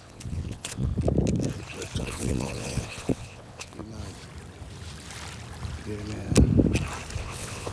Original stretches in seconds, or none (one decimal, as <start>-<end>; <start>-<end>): 0.9-2.0; 3.8-7.2